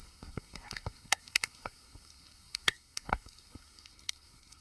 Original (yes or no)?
no